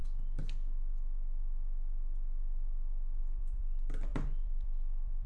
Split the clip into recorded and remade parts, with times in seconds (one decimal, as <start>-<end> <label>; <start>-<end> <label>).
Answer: 0.0-3.2 recorded; 3.2-5.3 remade